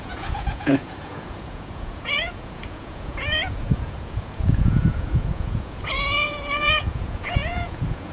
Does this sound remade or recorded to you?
remade